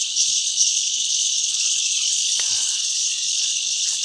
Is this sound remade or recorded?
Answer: remade